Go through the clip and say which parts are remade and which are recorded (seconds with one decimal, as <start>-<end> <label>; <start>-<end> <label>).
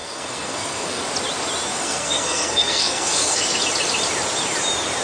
0.0-1.0 remade; 1.0-1.7 recorded; 1.7-3.6 remade; 3.6-5.0 recorded